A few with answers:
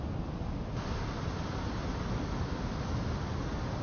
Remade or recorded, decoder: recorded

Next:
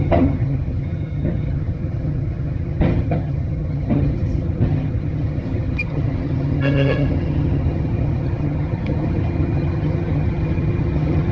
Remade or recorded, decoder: remade, vocoder, HiFi-GAN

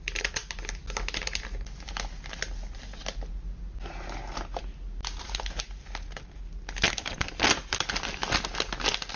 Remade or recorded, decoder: recorded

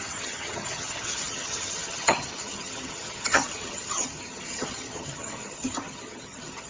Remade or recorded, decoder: remade, vocoder, HiFi-GAN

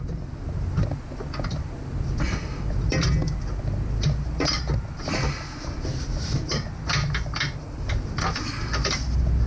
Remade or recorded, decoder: recorded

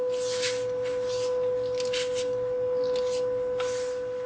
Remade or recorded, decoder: recorded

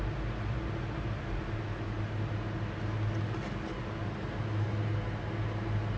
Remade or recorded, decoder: recorded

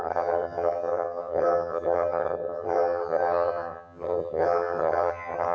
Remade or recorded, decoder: remade, vocoder, HiFi-GAN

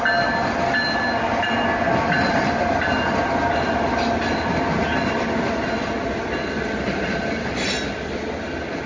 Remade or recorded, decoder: recorded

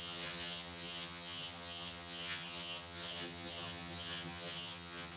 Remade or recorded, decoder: remade, vocoder, HiFi-GAN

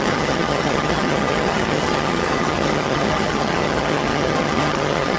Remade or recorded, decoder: remade, vocoder, HiFi-GAN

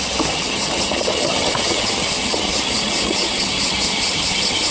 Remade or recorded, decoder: remade, vocoder, HiFi-GAN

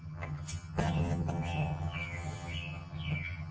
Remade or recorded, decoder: remade, vocoder, HiFi-GAN